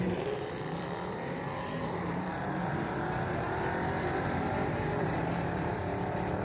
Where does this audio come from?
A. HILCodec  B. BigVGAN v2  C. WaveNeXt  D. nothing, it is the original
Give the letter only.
B